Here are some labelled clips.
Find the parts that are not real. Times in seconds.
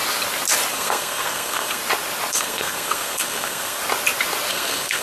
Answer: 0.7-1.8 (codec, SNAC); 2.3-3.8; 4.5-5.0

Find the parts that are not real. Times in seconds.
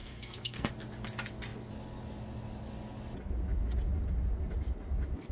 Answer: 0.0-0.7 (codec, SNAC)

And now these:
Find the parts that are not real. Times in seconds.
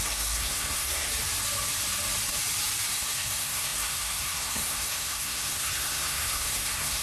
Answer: 0.0-1.1 (codec, SNAC); 2.9-7.0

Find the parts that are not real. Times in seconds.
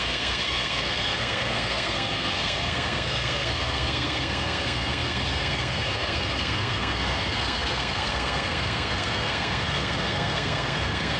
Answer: 0.0-11.2 (codec, SNAC)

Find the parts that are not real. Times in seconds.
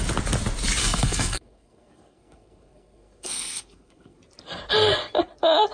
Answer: 0.8-4.2 (codec, SNAC)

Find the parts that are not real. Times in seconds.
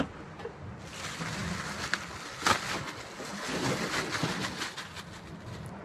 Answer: none